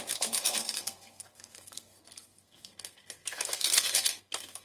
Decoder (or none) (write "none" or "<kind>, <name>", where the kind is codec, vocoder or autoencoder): codec, SNAC